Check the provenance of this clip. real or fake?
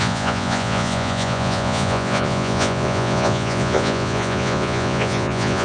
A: fake